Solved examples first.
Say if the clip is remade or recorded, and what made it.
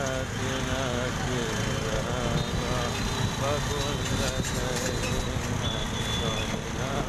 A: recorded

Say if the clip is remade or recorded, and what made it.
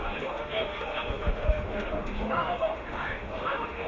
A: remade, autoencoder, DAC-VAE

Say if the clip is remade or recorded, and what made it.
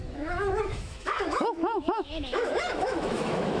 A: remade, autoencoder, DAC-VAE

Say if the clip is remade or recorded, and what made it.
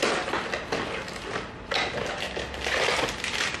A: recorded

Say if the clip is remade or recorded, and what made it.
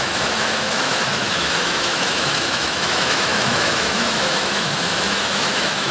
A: remade, autoencoder, DAC-VAE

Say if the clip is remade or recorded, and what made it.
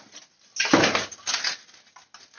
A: recorded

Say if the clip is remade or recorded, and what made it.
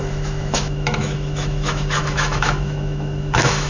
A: remade, autoencoder, DAC-VAE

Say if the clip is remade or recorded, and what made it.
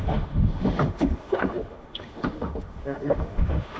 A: remade, autoencoder, DAC-VAE